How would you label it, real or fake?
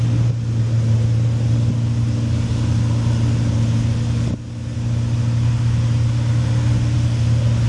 real